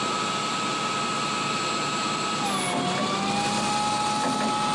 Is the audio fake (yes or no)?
no